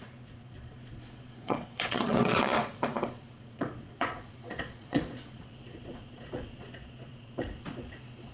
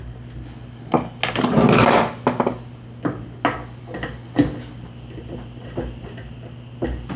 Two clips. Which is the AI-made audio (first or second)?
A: first